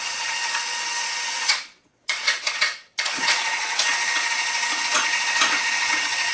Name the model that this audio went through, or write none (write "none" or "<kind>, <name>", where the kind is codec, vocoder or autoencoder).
vocoder, WaveNeXt